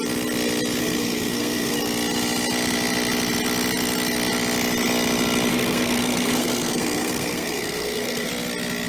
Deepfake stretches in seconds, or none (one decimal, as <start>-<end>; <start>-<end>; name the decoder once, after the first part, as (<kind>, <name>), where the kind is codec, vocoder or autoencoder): 0.8-1.8 (codec, SNAC); 5.5-8.3